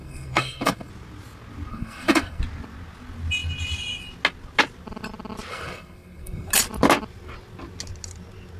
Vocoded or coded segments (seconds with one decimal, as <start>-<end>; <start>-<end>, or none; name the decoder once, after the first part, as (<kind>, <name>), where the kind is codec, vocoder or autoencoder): 0.0-0.9 (codec, SNAC); 1.7-2.4; 5.5-6.5